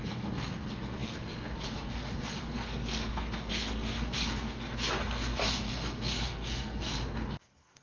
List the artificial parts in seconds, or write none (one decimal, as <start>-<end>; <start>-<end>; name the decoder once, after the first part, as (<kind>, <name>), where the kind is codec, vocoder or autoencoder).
0.0-7.8 (codec, SNAC)